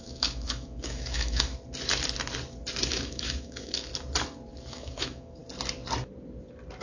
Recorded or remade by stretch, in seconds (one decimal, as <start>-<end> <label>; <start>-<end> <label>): 0.0-1.5 remade; 1.5-2.8 recorded; 2.8-3.9 remade; 3.9-4.7 recorded; 4.7-5.4 remade; 5.4-6.8 recorded